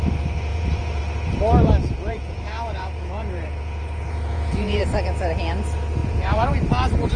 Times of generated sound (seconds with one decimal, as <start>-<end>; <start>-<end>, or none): 0.5-1.0; 1.8-4.8; 6.0-6.5